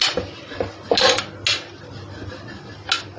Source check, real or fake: real